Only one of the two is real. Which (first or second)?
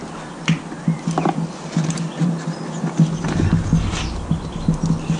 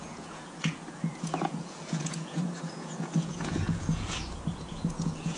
first